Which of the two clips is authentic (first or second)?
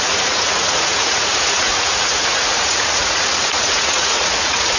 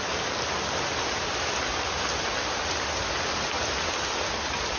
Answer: second